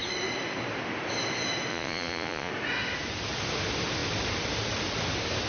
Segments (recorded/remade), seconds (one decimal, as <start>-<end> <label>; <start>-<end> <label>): 0.0-1.7 recorded; 1.7-2.5 remade; 2.5-5.5 recorded